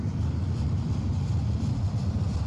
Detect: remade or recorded recorded